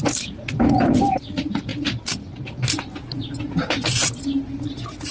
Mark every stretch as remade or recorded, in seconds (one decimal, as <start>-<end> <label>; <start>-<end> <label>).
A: 0.0-5.1 recorded